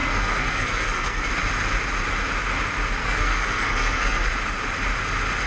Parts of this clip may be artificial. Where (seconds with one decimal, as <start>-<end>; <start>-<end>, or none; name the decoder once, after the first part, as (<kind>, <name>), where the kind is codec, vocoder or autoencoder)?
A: 0.0-1.3 (codec, SNAC); 3.0-4.3